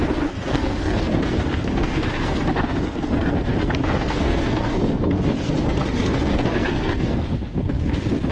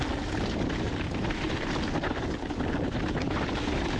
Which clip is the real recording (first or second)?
second